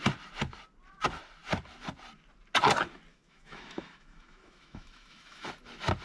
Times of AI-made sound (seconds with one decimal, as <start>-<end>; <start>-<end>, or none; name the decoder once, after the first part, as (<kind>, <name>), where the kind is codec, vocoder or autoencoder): 3.1-5.5 (autoencoder, DAC-VAE)